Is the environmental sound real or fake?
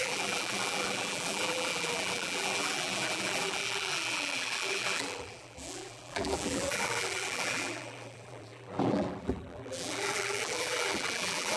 fake